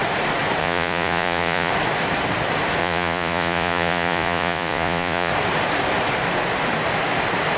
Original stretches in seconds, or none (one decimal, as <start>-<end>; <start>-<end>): 0.0-0.6; 1.7-2.8; 5.3-7.6